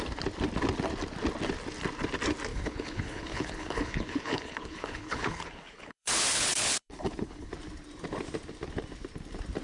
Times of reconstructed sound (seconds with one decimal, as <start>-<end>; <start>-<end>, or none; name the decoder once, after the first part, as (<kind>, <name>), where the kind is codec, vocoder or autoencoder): 2.5-7.5 (codec, HILCodec)